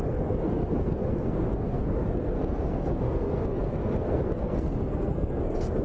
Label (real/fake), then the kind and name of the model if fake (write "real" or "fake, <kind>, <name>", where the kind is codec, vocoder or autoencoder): fake, codec, SNAC